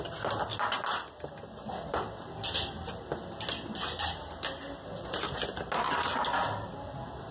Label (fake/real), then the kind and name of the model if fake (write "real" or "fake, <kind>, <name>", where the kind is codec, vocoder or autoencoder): real